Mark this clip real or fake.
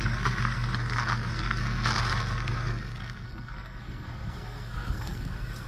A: fake